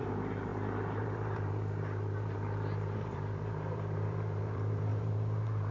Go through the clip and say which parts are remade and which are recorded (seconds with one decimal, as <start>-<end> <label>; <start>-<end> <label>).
0.0-5.7 remade